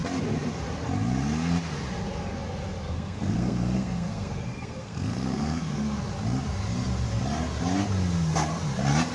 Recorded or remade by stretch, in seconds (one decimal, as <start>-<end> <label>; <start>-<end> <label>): 0.0-2.8 recorded; 2.8-6.0 remade; 6.0-9.1 recorded